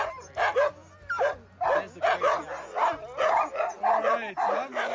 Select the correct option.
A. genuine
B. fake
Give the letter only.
A